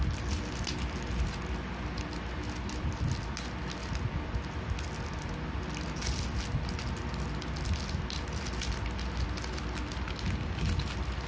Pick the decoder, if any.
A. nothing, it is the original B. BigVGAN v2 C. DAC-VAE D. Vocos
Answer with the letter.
A